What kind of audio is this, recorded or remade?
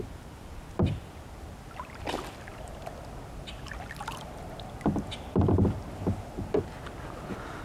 recorded